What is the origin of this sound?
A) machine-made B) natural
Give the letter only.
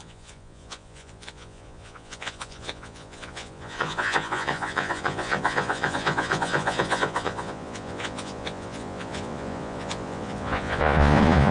A